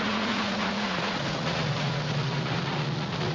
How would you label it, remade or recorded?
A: remade